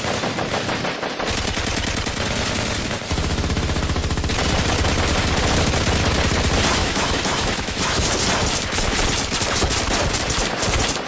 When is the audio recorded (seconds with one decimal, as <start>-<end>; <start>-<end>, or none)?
0.0-6.8; 8.1-11.1